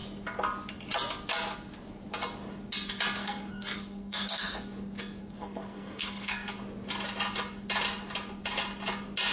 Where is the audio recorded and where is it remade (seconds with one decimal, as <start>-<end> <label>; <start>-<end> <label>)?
0.0-3.2 recorded; 3.2-4.6 remade; 4.6-5.2 recorded; 5.2-6.5 remade; 6.5-9.3 recorded

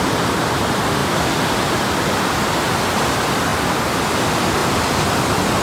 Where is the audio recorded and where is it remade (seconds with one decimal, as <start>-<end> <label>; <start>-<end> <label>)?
0.0-1.0 recorded; 1.0-1.8 remade; 1.8-3.5 recorded; 3.5-4.1 remade; 4.1-5.6 recorded

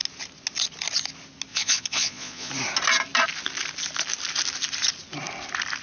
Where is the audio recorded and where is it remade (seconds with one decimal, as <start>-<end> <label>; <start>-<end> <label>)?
0.0-1.5 recorded; 1.5-2.5 remade; 2.5-5.8 recorded